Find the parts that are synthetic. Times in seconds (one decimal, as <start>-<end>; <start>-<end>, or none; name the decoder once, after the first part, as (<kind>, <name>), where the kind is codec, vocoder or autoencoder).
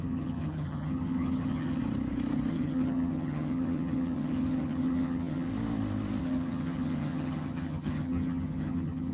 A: 0.0-1.8 (vocoder, HiFi-GAN); 2.5-5.5; 6.2-9.1